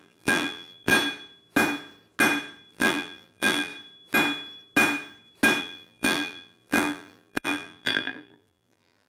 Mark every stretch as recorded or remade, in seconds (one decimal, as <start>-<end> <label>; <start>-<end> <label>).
0.0-0.9 remade; 0.9-2.7 recorded; 2.7-3.7 remade; 3.7-5.6 recorded; 5.6-9.1 remade